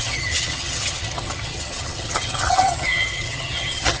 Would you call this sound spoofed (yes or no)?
yes